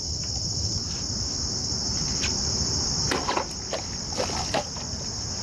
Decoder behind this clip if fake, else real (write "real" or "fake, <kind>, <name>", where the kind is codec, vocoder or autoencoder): real